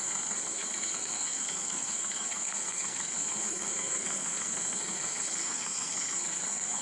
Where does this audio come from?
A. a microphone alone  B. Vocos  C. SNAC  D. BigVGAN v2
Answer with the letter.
C